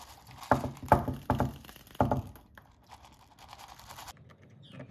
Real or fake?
real